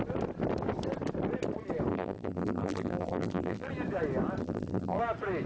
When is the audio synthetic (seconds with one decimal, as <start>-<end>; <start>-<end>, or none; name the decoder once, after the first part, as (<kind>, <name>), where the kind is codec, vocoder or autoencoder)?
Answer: 1.9-3.7 (vocoder, BigVGAN v2); 4.4-5.0